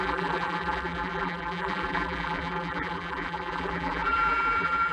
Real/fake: fake